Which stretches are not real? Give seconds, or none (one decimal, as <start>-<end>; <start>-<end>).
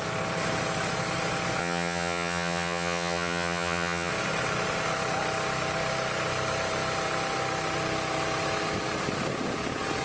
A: 1.6-4.1